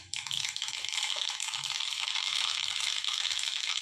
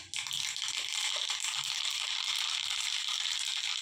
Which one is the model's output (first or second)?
first